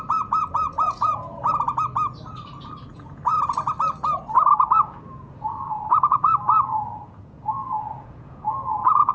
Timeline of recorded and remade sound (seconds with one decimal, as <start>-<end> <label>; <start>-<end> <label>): 0.0-1.5 remade; 1.5-2.9 recorded; 2.9-3.3 remade; 3.3-4.7 recorded; 4.7-9.1 remade